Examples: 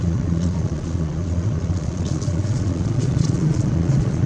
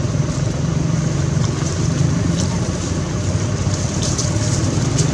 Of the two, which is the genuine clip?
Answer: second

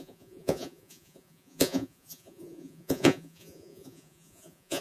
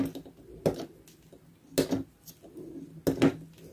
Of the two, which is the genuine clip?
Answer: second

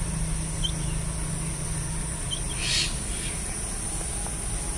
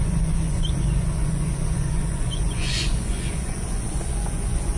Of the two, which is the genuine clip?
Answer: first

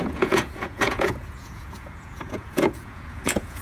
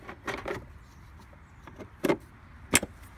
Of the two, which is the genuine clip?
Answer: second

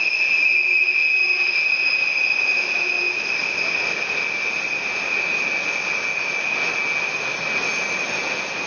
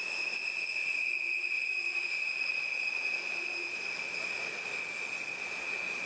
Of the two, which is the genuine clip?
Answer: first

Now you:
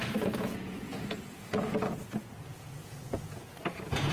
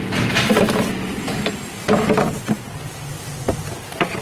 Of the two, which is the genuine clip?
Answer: second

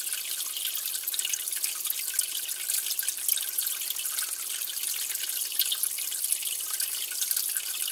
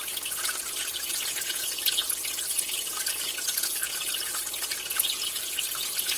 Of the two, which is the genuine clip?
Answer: first